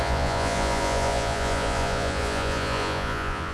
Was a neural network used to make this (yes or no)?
yes